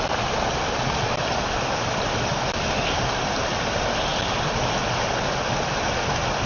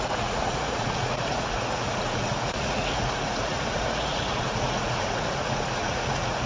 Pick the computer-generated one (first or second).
second